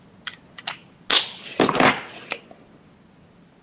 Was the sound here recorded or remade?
recorded